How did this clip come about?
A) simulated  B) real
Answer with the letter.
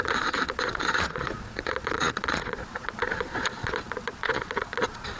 A